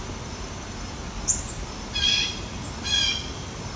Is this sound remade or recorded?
recorded